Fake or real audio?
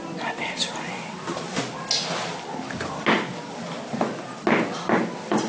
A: real